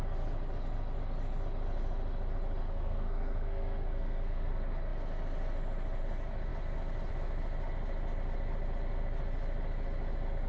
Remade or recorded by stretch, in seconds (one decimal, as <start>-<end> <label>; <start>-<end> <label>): 0.0-2.6 recorded; 2.6-4.5 remade; 4.5-10.5 recorded